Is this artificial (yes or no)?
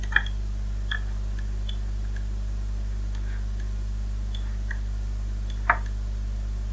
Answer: no